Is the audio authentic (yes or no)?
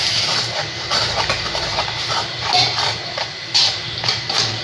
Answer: no